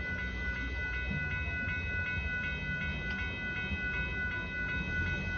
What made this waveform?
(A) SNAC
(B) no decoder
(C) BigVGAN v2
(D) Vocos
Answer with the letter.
B